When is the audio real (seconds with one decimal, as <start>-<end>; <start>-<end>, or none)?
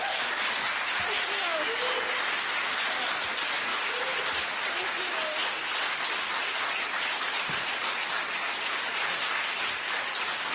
0.0-10.5